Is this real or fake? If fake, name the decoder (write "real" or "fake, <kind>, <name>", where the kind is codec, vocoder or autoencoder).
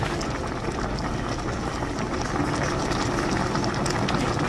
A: real